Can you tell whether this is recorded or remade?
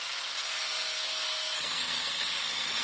remade